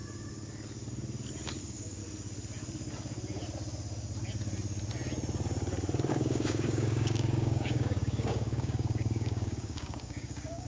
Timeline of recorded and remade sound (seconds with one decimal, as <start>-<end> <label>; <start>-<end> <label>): 0.0-1.6 recorded; 1.6-2.0 remade; 2.0-6.1 recorded; 6.1-10.7 remade